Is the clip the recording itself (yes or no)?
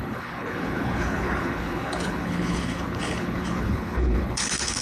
no